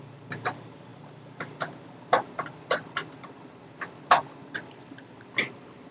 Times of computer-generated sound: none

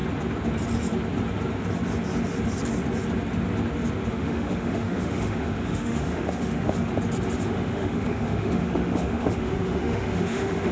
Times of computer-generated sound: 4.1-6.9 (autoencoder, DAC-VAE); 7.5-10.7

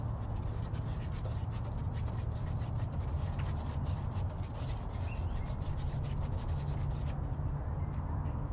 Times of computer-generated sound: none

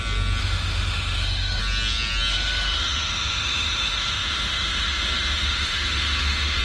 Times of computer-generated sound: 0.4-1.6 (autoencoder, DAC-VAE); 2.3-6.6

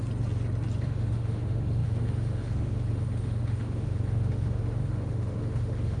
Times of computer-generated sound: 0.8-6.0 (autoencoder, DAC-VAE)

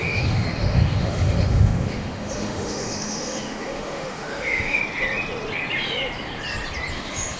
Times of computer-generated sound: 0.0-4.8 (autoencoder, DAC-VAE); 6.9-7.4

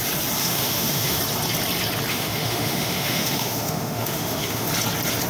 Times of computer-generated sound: 0.4-1.2 (autoencoder, DAC-VAE); 2.1-4.7

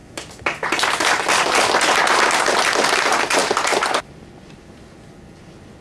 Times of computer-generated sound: none